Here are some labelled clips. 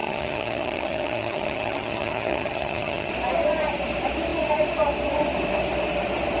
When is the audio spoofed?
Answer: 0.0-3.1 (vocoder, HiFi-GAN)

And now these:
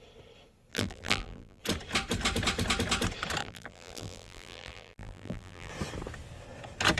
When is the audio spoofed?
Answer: 0.7-1.6 (vocoder, BigVGAN v2); 3.4-5.7

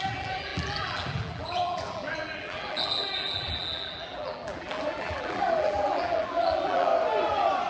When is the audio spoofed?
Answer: 0.0-6.9 (vocoder, BigVGAN v2)

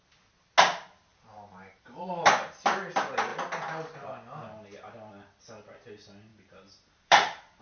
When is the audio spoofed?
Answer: 1.1-2.5 (vocoder, BigVGAN v2); 6.3-7.6

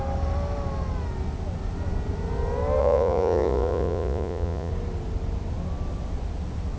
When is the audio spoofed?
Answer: 2.8-4.7 (vocoder, Vocos)

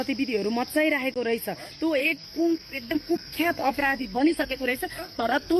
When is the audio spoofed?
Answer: 2.0-5.6 (codec, SNAC)

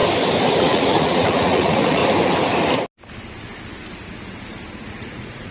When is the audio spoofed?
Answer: 0.6-2.0 (vocoder, Vocos); 4.9-5.5